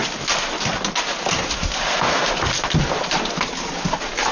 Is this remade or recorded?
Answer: recorded